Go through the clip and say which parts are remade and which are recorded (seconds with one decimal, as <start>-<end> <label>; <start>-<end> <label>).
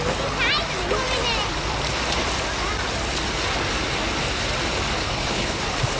0.0-5.0 recorded; 5.0-5.6 remade; 5.6-6.0 recorded